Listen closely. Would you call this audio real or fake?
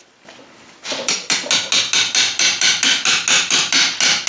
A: real